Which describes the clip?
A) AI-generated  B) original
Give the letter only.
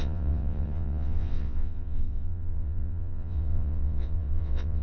A